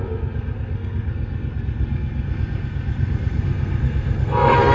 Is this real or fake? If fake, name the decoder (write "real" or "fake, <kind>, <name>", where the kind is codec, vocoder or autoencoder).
fake, codec, SNAC